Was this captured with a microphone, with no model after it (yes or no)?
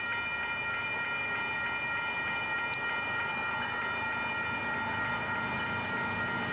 yes